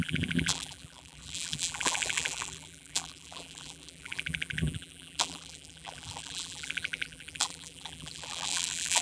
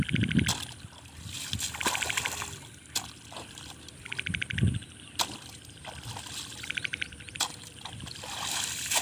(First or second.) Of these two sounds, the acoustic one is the second